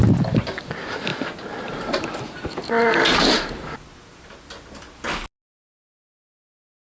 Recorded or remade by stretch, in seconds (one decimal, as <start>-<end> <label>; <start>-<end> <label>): 0.0-6.9 recorded